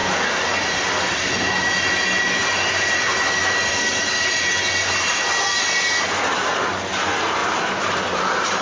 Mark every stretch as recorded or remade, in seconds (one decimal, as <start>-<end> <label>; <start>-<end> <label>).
0.0-7.4 recorded; 7.4-8.6 remade